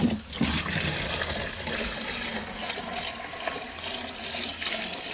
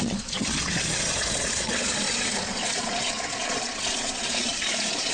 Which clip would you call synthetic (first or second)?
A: second